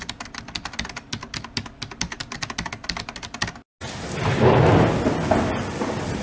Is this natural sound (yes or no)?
yes